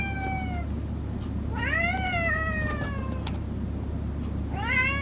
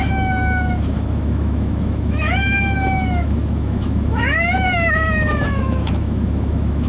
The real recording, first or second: first